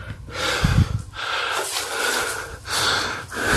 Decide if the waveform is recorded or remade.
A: recorded